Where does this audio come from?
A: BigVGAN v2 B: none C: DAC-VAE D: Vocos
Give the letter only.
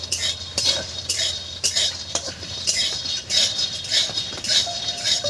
A